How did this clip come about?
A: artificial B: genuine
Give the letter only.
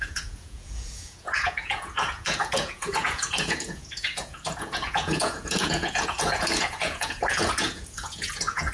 A